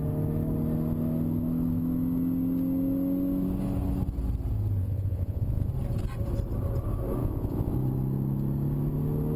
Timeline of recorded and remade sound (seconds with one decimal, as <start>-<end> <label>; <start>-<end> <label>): 0.0-4.8 recorded; 4.8-5.7 remade; 5.7-7.2 recorded; 7.2-7.7 remade; 7.7-9.4 recorded